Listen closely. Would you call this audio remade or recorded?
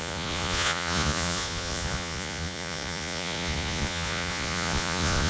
remade